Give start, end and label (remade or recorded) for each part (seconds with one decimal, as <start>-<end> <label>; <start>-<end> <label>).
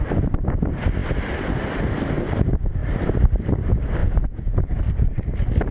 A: 0.0-4.0 recorded; 4.0-4.7 remade; 4.7-5.7 recorded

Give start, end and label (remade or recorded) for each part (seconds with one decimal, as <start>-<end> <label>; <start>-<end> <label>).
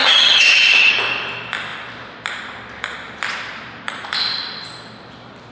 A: 0.0-0.9 remade; 0.9-5.5 recorded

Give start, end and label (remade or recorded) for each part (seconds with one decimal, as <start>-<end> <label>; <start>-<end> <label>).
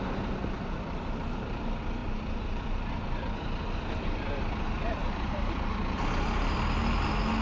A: 0.0-2.0 recorded; 2.0-4.4 remade; 4.4-5.0 recorded; 5.0-5.5 remade; 5.5-7.4 recorded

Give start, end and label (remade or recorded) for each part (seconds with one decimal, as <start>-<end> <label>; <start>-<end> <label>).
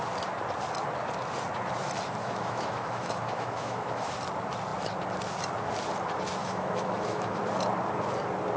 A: 0.0-2.2 recorded; 2.2-4.1 remade; 4.1-6.4 recorded; 6.4-7.4 remade; 7.4-8.6 recorded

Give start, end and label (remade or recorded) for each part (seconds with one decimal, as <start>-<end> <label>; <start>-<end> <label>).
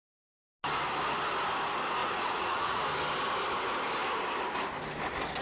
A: 0.0-2.0 recorded; 2.0-2.8 remade; 2.8-5.4 recorded